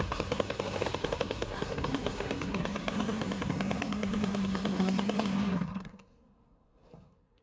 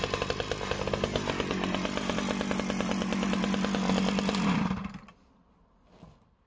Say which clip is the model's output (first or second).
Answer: first